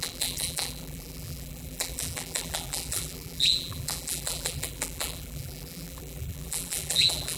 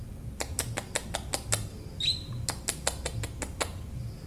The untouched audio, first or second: second